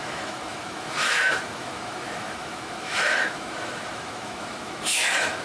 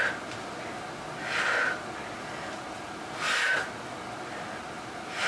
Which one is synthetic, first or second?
first